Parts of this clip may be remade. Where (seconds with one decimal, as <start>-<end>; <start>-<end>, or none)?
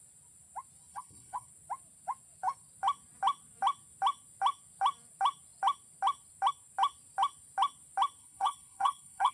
0.9-1.5; 8.2-9.3